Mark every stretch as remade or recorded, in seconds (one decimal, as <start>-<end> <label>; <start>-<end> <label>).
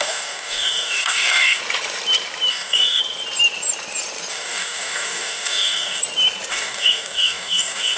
0.0-1.6 remade; 1.6-2.5 recorded; 2.5-3.0 remade; 3.0-4.3 recorded; 4.3-6.0 remade; 6.0-6.5 recorded; 6.5-8.0 remade